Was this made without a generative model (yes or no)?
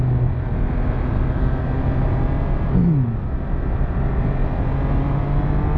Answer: yes